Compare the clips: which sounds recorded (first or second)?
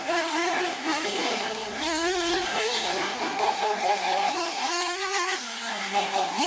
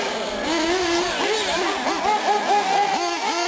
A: second